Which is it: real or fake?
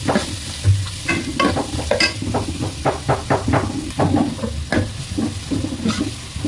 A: real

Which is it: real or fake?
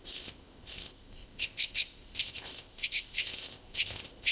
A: fake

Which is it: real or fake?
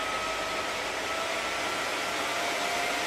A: real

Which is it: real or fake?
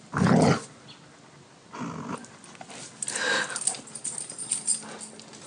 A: real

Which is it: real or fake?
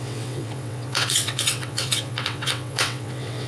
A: fake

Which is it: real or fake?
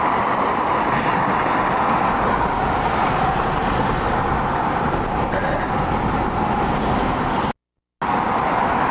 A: real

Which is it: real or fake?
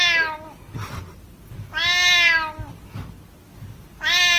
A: real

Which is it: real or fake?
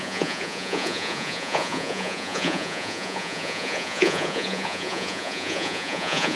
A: fake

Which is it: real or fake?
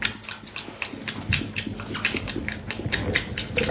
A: real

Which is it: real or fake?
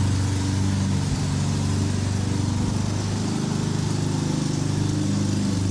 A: real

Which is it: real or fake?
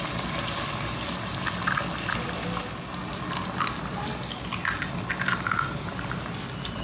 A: real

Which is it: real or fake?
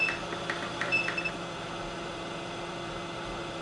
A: real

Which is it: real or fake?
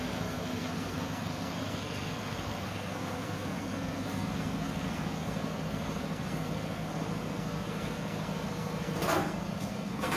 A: fake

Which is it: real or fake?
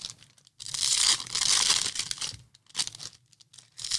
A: real